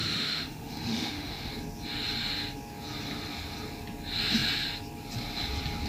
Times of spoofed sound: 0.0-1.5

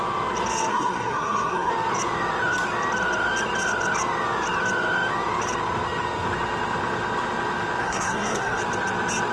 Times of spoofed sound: 0.7-1.7; 7.8-8.6

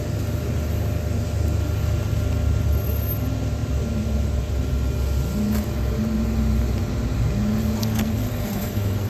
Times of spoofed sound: 7.8-9.1

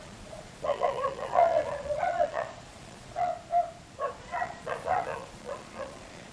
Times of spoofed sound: 0.0-3.3; 4.2-6.3